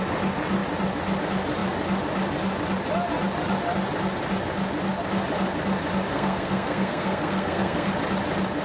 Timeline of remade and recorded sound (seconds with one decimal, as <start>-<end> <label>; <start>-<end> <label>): 0.0-6.1 recorded; 6.1-7.9 remade; 7.9-8.6 recorded